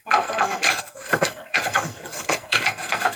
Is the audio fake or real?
fake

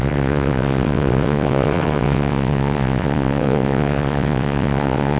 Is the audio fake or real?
fake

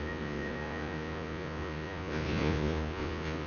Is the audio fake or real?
fake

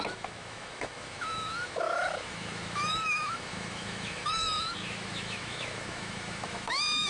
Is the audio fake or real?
fake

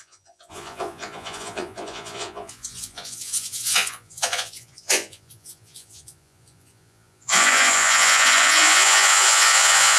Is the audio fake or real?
fake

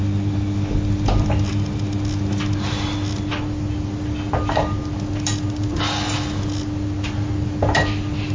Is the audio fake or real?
real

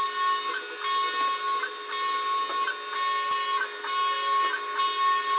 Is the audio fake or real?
real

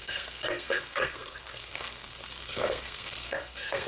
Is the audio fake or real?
fake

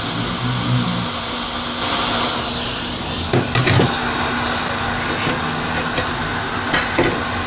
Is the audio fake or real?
real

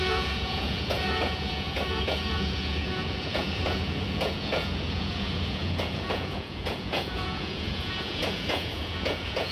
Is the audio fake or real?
fake